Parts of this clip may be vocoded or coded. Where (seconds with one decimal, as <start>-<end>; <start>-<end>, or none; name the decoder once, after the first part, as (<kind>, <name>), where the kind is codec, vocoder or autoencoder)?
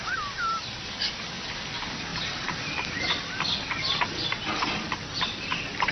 2.1-5.9 (vocoder, BigVGAN v2)